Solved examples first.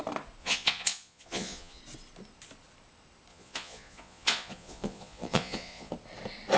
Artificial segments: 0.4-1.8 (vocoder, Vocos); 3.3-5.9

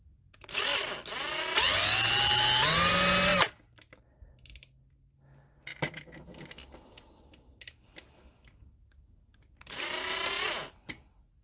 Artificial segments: none